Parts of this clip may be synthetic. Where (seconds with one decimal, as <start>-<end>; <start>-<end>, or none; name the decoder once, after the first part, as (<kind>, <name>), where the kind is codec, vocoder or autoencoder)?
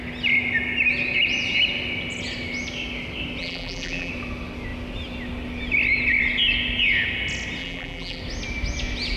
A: 3.4-4.1 (vocoder, BigVGAN v2); 7.6-8.2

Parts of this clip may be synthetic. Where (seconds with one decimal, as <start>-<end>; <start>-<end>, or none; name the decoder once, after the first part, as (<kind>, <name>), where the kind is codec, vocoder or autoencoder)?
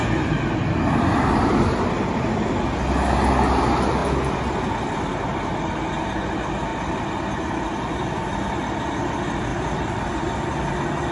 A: 9.5-10.7 (vocoder, BigVGAN v2)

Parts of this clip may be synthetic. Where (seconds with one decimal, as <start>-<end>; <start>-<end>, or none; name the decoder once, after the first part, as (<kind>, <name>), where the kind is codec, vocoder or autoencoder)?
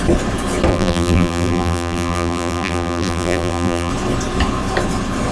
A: 0.7-3.9 (vocoder, BigVGAN v2)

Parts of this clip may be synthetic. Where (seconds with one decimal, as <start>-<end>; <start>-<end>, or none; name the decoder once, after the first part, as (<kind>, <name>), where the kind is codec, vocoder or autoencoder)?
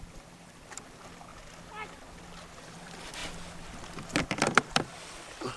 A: 0.0-1.3 (vocoder, BigVGAN v2); 2.6-3.2; 4.2-5.6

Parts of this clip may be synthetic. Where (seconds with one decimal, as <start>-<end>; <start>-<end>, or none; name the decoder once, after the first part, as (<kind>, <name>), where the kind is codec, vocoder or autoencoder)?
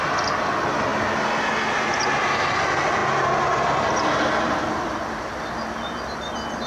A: none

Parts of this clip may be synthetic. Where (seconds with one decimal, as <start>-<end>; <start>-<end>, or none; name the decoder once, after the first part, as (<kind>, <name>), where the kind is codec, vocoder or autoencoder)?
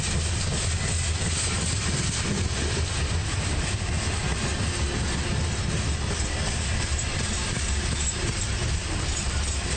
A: 3.2-3.9 (vocoder, BigVGAN v2); 6.9-9.4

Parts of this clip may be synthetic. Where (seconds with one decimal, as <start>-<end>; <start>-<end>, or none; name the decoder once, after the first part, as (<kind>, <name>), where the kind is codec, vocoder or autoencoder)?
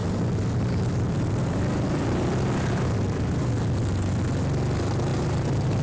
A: 0.0-3.5 (vocoder, BigVGAN v2); 5.1-5.8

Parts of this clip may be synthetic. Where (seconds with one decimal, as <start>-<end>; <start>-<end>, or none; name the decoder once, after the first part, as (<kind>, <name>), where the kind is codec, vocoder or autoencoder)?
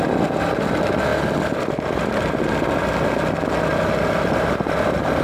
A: 1.1-2.5 (vocoder, BigVGAN v2); 3.7-5.2